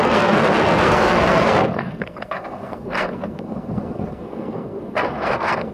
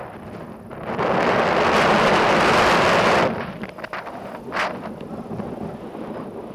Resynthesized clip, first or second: first